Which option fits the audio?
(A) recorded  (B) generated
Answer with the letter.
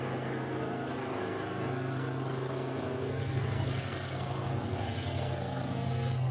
B